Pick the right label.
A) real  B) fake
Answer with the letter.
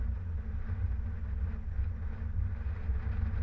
A